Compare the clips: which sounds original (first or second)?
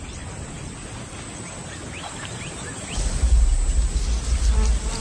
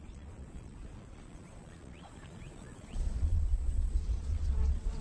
first